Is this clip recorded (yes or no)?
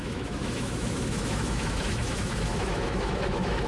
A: no